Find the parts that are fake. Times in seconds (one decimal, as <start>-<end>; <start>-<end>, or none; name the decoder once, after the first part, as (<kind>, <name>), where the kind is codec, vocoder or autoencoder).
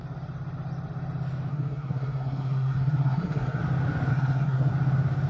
1.5-3.6 (codec, SNAC); 4.1-4.7